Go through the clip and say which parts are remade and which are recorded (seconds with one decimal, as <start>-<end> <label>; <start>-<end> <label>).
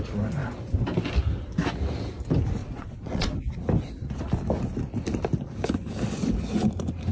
0.0-2.6 recorded; 2.6-3.3 remade; 3.3-7.1 recorded